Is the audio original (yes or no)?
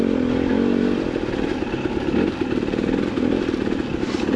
yes